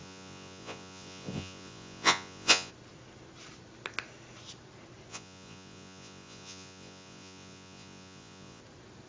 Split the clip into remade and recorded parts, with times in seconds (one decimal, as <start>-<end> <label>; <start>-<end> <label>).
0.0-2.7 remade; 2.7-5.1 recorded; 5.1-8.6 remade; 8.6-9.1 recorded

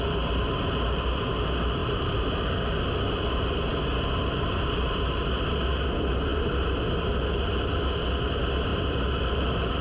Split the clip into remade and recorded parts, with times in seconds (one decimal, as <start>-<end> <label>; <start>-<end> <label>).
0.0-9.8 recorded

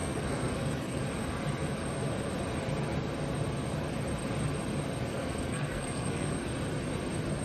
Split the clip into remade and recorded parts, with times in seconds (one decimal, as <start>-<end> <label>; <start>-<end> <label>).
0.0-1.0 remade; 1.0-5.1 recorded; 5.1-6.3 remade; 6.3-7.4 recorded

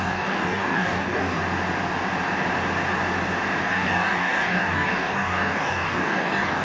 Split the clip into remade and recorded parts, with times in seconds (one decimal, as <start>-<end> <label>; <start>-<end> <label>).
0.0-1.4 remade; 1.4-3.6 recorded; 3.6-6.6 remade

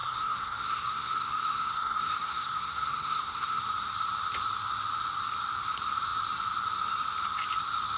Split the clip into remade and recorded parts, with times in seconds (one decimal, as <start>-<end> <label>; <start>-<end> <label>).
0.0-3.6 remade; 3.6-8.0 recorded

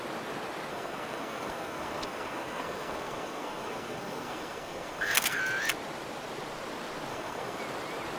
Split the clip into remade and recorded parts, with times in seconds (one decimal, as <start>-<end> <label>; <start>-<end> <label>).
0.0-0.7 recorded; 0.7-5.4 remade; 5.4-7.1 recorded; 7.1-7.6 remade; 7.6-8.2 recorded

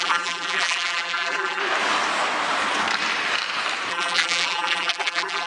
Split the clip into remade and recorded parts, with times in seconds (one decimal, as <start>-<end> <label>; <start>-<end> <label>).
0.0-1.6 remade; 1.6-3.9 recorded; 3.9-5.5 remade